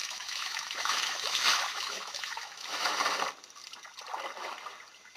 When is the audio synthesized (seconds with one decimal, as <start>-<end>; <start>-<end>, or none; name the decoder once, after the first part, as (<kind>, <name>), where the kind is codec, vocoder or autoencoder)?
0.0-2.9 (autoencoder, DAC-VAE)